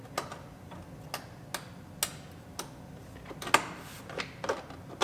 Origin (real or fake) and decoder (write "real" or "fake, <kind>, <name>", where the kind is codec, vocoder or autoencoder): real